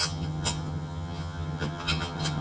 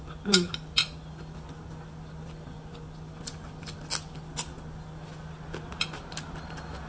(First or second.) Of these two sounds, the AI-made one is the first